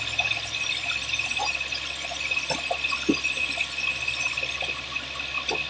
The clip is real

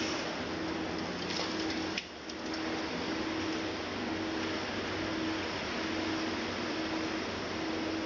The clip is real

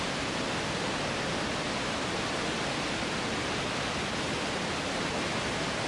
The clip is real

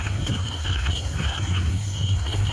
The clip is fake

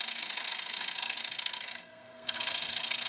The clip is fake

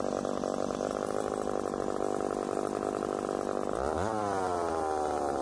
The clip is real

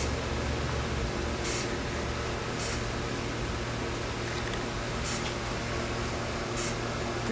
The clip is real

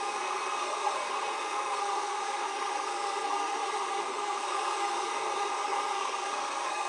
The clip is fake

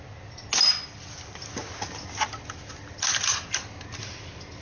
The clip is real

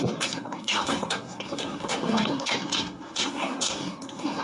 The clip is fake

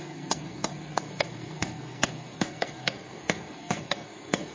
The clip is fake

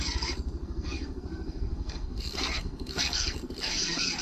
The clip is fake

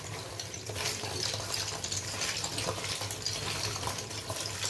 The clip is real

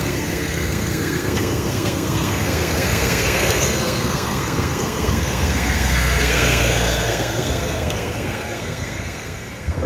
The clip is fake